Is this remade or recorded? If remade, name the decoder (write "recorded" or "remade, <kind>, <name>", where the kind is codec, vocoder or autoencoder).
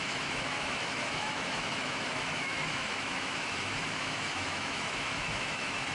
remade, autoencoder, DAC-VAE